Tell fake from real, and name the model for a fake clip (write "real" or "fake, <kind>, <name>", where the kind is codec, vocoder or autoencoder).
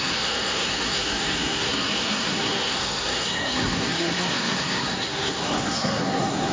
fake, codec, SNAC